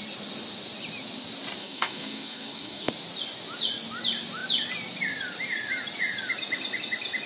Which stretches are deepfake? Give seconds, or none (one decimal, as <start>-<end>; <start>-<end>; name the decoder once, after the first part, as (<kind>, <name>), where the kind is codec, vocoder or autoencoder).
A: 1.6-2.9 (codec, SNAC)